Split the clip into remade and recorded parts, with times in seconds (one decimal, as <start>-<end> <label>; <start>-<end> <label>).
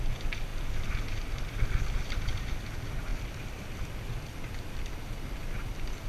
0.0-6.1 recorded